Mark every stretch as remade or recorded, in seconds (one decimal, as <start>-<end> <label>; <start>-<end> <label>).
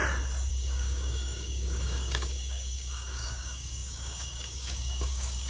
0.0-0.5 recorded; 0.5-5.5 remade